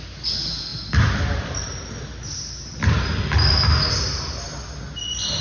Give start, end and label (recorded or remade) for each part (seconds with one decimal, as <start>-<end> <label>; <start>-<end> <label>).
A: 0.0-5.4 recorded